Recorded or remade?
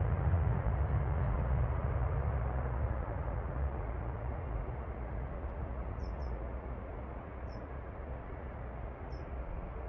remade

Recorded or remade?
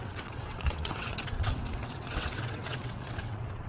remade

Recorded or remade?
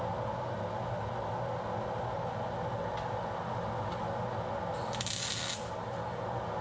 recorded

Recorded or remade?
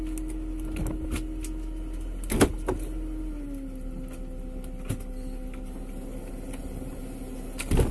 recorded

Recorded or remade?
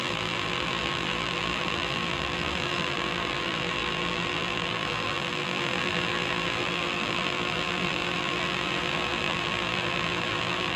remade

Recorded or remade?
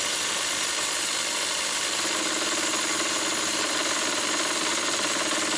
recorded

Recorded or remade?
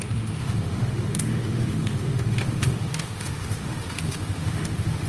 remade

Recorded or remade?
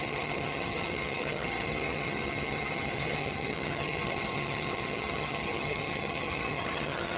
remade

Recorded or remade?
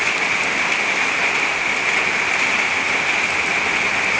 recorded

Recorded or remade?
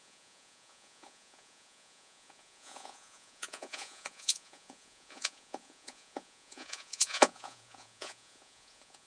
remade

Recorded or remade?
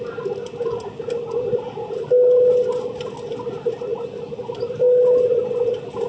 recorded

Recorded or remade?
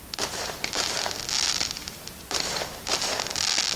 recorded